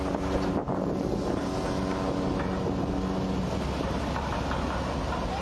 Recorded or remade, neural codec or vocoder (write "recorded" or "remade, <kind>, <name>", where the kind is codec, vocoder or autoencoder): recorded